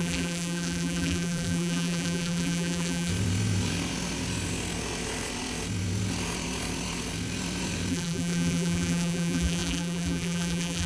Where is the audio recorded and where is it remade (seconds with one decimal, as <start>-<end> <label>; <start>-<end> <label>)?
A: 0.0-3.1 remade; 3.1-7.9 recorded; 7.9-10.9 remade